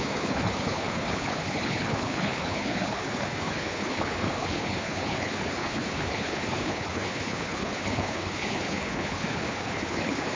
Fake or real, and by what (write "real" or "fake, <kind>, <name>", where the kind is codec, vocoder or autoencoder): fake, codec, HILCodec